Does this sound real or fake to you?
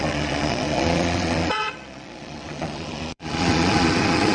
fake